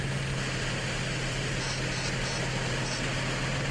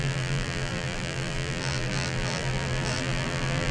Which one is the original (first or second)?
first